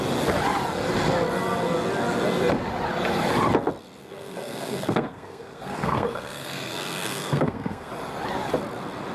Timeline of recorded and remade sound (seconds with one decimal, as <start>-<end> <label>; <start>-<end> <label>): 0.0-4.0 recorded; 4.0-7.9 remade; 7.9-9.1 recorded